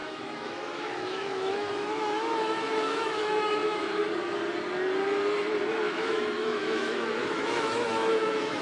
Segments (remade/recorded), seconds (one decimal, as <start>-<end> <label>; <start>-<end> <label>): 0.0-4.0 remade; 4.0-5.7 recorded; 5.7-8.6 remade